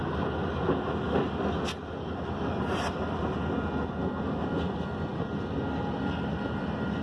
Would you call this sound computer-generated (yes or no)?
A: no